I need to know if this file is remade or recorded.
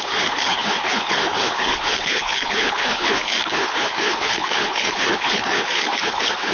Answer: remade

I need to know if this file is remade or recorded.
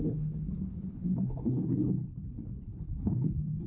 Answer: remade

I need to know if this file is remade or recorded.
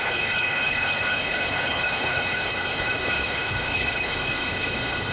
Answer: remade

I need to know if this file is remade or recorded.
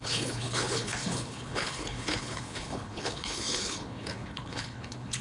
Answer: remade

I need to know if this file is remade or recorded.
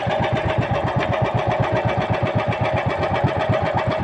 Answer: recorded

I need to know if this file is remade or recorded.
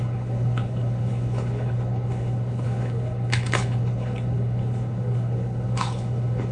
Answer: remade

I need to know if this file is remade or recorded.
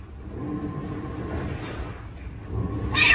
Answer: recorded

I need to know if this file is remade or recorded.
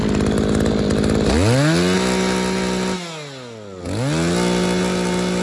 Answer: recorded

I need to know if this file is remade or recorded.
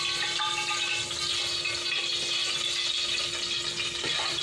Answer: recorded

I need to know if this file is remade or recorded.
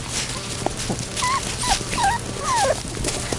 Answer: recorded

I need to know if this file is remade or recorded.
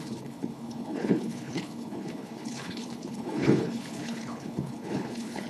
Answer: remade